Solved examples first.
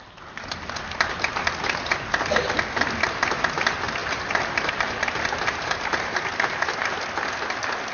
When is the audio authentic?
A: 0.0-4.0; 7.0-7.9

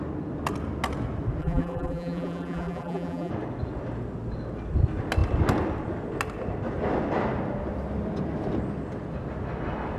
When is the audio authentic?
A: 0.0-1.4; 3.3-10.0

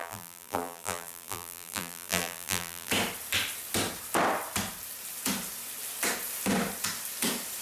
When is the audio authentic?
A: 2.9-7.6

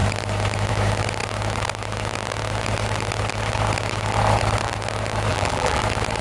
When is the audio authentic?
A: 0.0-5.3; 5.8-6.2

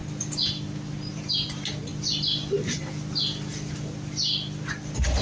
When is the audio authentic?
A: 0.0-1.1; 1.9-5.2

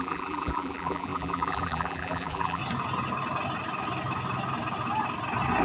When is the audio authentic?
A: 2.6-5.6

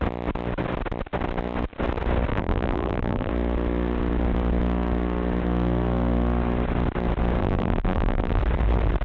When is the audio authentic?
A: 0.0-2.3; 3.3-7.4; 8.4-9.0

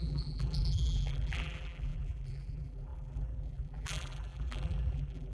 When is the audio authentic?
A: none